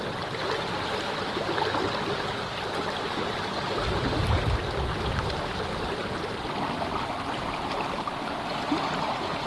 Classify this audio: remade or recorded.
recorded